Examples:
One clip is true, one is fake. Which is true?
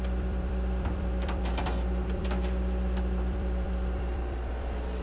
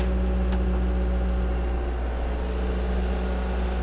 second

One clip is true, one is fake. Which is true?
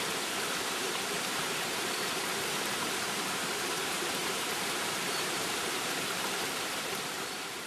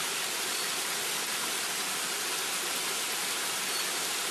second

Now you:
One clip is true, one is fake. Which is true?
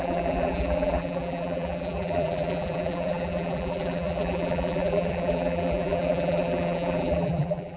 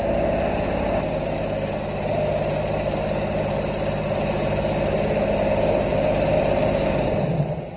second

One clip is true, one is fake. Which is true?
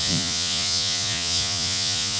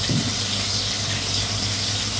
second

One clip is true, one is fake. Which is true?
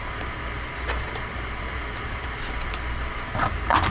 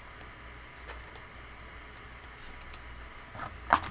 second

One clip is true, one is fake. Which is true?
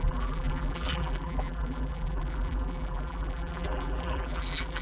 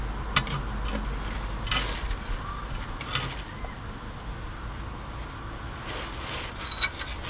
second